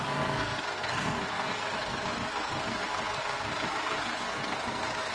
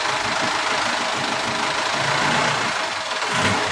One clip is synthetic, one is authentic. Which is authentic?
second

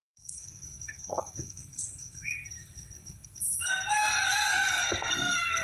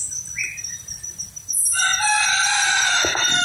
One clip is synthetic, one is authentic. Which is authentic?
second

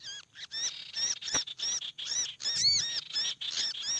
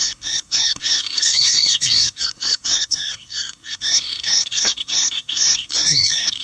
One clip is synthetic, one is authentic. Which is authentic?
first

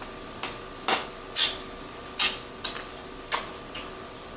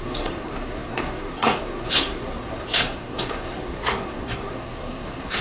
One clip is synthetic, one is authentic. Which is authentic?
first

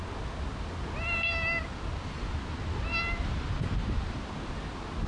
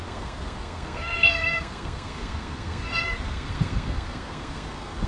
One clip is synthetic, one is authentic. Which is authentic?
first